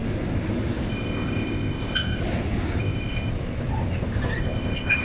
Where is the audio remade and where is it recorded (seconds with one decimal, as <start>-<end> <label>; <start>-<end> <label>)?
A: 0.0-0.9 recorded; 0.9-2.2 remade; 2.2-2.8 recorded; 2.8-3.3 remade; 3.3-4.4 recorded; 4.4-5.0 remade